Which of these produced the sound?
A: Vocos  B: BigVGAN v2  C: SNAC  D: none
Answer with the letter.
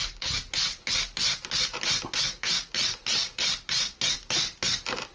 D